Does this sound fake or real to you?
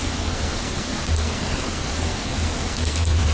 fake